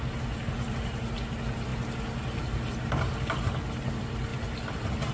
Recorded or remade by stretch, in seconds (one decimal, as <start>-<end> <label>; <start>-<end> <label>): 0.0-0.4 recorded; 0.4-1.0 remade; 1.0-5.1 recorded